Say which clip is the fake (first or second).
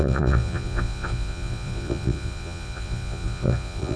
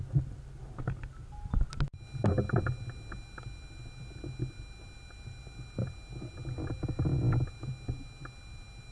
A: first